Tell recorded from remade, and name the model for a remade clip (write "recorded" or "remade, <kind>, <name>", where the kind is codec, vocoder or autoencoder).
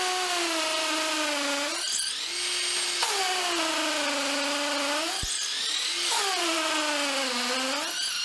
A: recorded